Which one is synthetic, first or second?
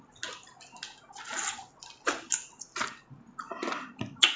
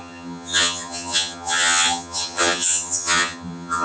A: second